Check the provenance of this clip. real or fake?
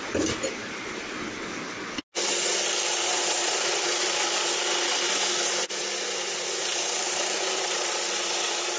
real